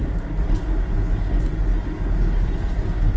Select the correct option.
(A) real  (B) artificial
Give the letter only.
A